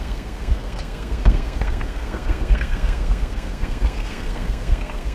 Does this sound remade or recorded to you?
remade